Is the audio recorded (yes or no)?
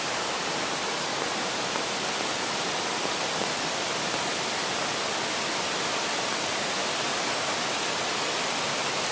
yes